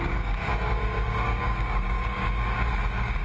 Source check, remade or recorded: remade